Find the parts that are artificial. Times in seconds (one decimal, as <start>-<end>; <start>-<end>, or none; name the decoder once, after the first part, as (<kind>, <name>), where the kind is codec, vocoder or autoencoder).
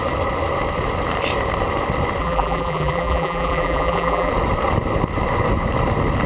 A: 2.2-4.3 (vocoder, BigVGAN v2)